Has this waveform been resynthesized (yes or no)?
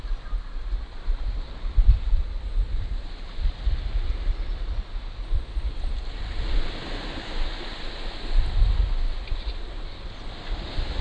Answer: no